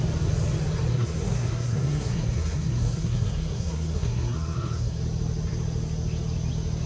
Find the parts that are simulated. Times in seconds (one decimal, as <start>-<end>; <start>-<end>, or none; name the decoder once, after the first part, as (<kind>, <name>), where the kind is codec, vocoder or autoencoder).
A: 0.9-5.0 (codec, SNAC)